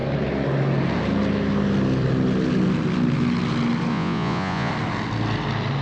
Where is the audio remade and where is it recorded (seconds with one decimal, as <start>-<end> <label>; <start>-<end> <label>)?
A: 0.0-3.9 recorded; 3.9-4.7 remade; 4.7-5.8 recorded